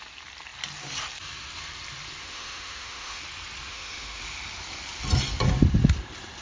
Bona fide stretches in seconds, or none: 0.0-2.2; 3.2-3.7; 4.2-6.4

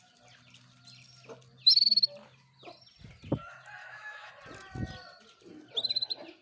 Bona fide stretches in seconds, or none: 0.0-3.8; 4.3-6.4

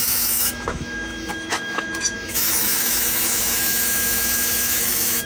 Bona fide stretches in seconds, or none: none

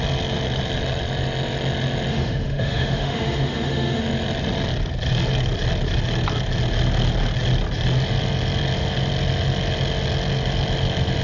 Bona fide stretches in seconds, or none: 0.0-2.1; 4.0-11.2

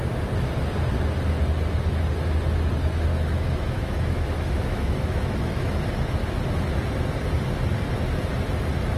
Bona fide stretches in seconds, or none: 0.0-3.1; 5.7-9.0

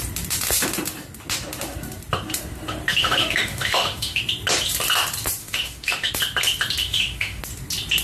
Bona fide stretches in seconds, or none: 0.0-2.9; 4.2-5.4; 6.1-6.8; 7.4-8.0

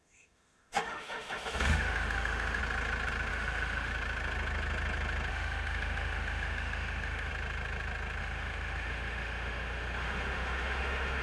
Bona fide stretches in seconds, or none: 2.6-3.3; 3.9-5.3; 7.3-8.2

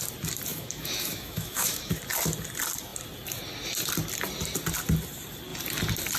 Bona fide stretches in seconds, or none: 0.0-0.5; 2.0-6.2